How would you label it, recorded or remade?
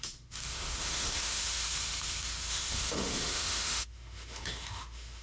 remade